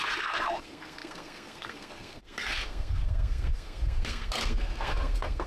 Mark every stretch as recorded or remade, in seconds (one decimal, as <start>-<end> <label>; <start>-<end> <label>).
0.0-5.5 remade